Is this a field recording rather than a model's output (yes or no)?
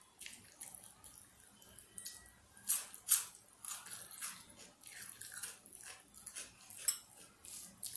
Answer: yes